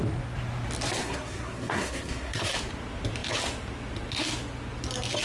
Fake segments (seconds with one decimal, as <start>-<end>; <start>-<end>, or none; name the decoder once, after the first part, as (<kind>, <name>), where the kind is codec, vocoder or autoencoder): 1.0-2.5 (codec, SNAC)